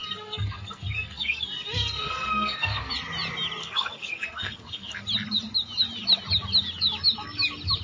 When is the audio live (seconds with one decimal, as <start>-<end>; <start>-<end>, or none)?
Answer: 2.9-3.6; 5.0-7.8

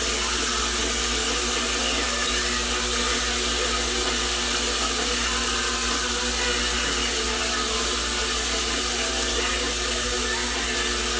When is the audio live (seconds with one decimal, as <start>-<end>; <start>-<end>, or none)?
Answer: 0.0-11.2

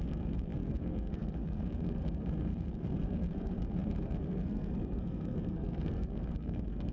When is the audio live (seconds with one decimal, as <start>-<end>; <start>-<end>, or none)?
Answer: none

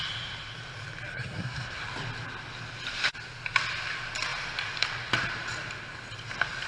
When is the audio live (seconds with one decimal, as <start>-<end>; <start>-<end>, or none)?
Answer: 0.0-1.1; 1.8-6.7

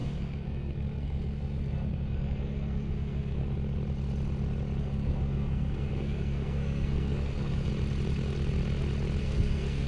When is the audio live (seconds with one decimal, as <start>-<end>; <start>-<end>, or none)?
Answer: 3.4-4.8; 7.7-9.2